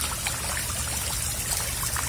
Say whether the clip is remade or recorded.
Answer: recorded